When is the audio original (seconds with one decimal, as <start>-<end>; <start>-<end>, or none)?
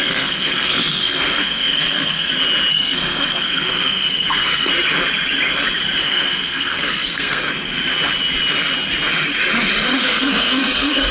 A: 2.3-2.7; 4.7-6.0; 7.5-10.0